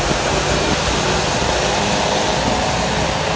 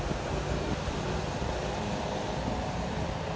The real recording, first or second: first